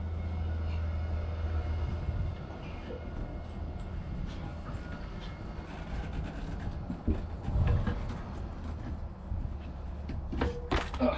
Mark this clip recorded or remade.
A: recorded